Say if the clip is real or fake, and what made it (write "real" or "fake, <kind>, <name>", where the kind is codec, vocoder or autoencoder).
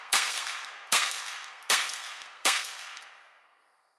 fake, codec, SNAC